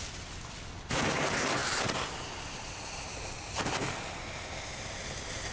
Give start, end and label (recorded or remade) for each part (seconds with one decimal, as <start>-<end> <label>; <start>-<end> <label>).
0.0-5.5 recorded